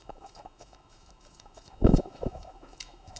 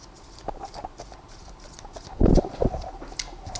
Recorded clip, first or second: second